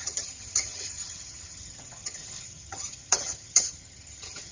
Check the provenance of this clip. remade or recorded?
remade